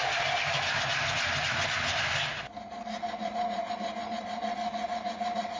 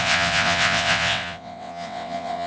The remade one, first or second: second